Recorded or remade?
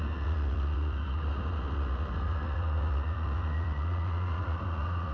remade